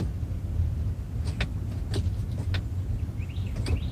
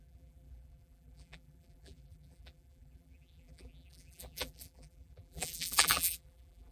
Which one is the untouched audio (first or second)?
first